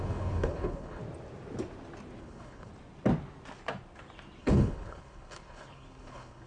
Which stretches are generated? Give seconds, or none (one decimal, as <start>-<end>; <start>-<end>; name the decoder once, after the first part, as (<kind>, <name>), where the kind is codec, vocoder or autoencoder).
0.0-1.0 (codec, HILCodec); 2.2-2.7; 4.4-6.5